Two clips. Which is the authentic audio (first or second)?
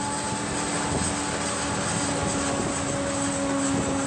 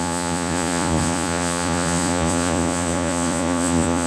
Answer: first